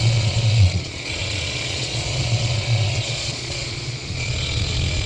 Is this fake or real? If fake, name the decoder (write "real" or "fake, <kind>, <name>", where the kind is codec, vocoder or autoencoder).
fake, vocoder, Vocos